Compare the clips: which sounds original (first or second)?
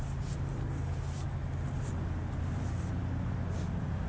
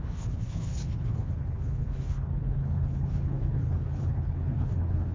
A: first